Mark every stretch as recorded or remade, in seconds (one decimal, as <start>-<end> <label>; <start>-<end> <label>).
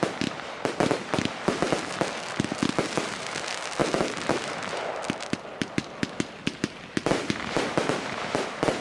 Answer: 0.0-8.8 recorded